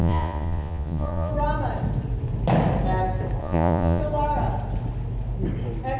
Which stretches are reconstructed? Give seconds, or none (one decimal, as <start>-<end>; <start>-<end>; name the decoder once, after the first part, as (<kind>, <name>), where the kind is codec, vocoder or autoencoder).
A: 0.0-1.3 (vocoder, Vocos); 3.4-4.0